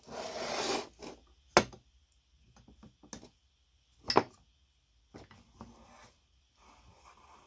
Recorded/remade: recorded